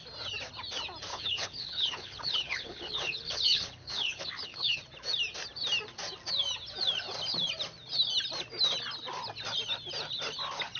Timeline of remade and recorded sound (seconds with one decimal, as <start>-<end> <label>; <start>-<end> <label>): 0.0-1.1 recorded; 1.1-4.8 remade; 4.8-10.8 recorded